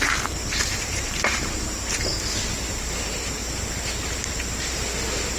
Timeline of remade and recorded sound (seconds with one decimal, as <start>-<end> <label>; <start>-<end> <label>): 0.0-2.1 remade; 2.1-2.8 recorded; 2.8-3.4 remade; 3.4-5.4 recorded

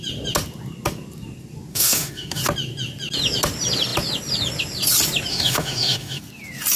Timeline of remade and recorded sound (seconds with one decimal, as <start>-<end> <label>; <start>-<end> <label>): 0.0-1.7 recorded; 1.7-2.4 remade; 2.4-5.3 recorded; 5.3-6.2 remade; 6.2-6.8 recorded